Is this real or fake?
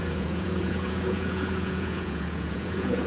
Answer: fake